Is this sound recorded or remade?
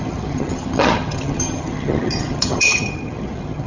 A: remade